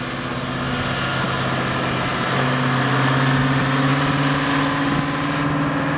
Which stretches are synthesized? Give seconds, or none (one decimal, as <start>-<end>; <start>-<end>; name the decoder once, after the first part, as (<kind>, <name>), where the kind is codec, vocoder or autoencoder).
none